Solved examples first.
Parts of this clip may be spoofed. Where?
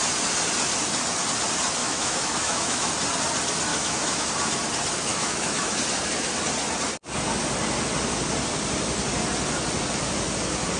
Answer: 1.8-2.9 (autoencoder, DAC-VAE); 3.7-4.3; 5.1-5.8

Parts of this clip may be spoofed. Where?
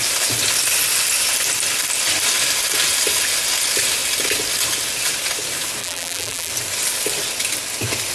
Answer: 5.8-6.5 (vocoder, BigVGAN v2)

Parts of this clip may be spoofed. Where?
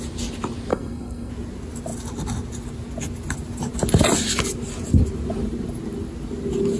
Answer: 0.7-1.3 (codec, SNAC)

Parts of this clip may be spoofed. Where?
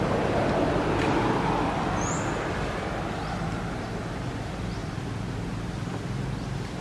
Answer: none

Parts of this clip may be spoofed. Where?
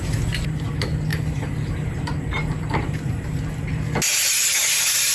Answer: 1.1-1.7 (vocoder, BigVGAN v2); 2.8-3.4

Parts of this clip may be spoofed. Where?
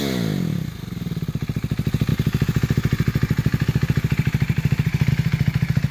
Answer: 2.1-5.1 (vocoder, BigVGAN v2)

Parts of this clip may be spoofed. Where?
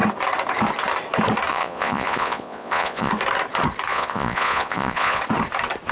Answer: 1.5-3.1 (vocoder, Vocos); 3.9-5.2